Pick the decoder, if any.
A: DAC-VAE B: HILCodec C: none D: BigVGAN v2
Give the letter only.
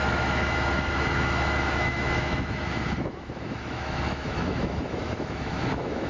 A